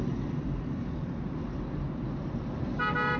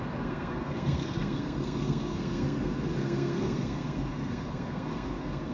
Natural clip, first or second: first